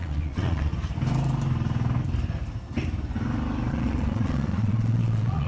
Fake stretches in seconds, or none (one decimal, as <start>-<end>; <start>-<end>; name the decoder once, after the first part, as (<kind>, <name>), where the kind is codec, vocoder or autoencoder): 0.0-0.7 (vocoder, Vocos); 3.7-5.5